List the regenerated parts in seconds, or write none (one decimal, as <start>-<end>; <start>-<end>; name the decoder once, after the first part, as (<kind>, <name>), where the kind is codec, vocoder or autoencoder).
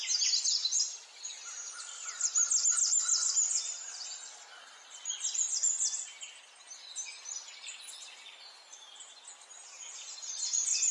none